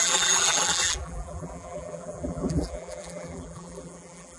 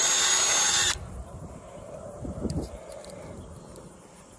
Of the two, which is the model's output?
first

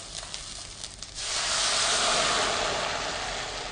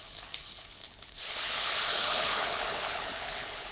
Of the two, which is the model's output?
second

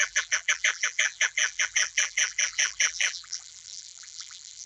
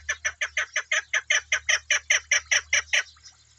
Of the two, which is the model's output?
first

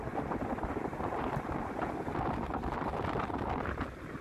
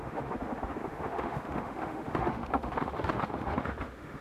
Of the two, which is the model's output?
second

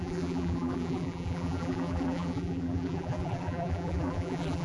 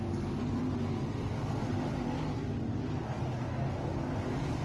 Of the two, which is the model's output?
first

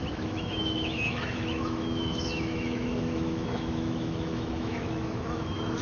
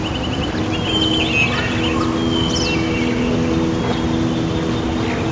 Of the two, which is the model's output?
first